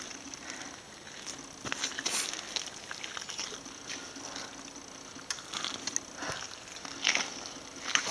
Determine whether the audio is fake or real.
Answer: real